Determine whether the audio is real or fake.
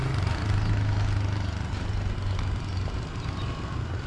real